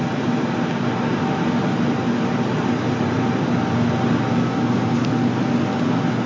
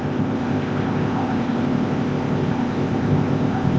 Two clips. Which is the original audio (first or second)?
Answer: first